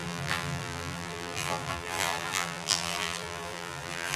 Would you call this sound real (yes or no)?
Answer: no